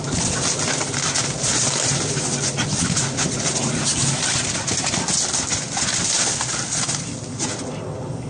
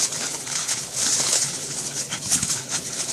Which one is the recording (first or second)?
first